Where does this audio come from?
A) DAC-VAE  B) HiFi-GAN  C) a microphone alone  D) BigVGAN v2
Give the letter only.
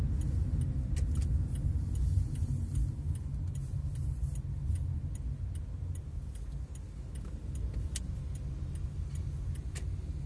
C